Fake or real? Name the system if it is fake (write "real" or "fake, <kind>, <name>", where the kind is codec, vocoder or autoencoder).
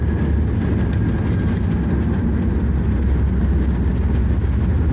real